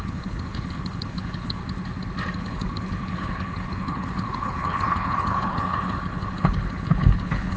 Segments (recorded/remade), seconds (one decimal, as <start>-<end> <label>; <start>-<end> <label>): 0.0-1.6 remade; 1.6-2.4 recorded; 2.4-7.6 remade